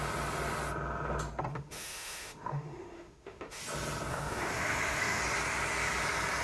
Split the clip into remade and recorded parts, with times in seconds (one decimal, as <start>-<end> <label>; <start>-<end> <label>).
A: 0.0-1.5 recorded; 1.5-3.6 remade; 3.6-4.1 recorded; 4.1-5.2 remade; 5.2-6.4 recorded